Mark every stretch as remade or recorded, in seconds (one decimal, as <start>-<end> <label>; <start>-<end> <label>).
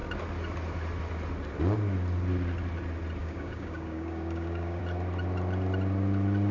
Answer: 0.0-3.2 recorded; 3.2-4.8 remade; 4.8-6.5 recorded